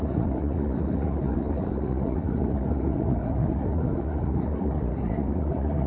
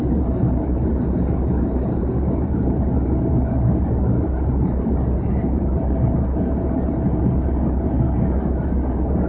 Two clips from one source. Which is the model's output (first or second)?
first